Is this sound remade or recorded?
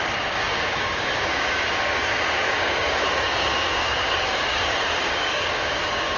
remade